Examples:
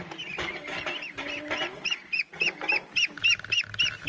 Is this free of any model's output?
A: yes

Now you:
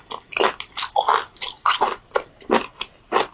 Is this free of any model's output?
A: yes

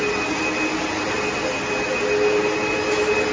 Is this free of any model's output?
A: yes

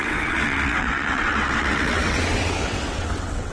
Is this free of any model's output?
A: no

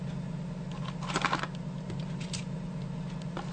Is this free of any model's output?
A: yes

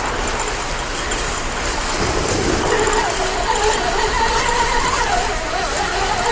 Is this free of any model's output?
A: yes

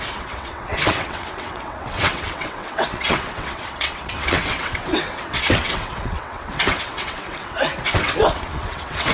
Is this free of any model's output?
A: no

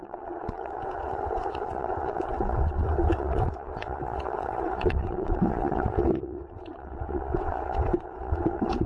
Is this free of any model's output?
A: no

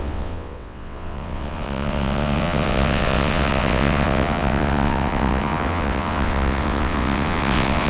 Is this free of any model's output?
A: no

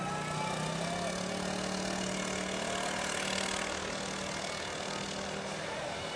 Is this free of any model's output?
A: yes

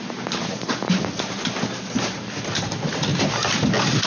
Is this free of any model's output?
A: yes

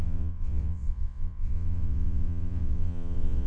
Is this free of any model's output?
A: no